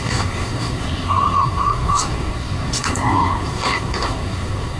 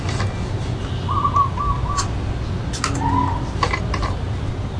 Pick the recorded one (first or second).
second